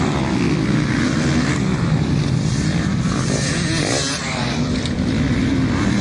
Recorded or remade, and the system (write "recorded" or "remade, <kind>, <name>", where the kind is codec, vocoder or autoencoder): recorded